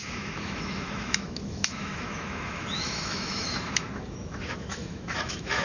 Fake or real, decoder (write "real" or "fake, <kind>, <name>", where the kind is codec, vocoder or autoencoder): fake, autoencoder, DAC-VAE